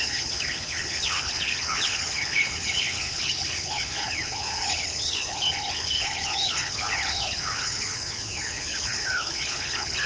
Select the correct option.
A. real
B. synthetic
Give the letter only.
B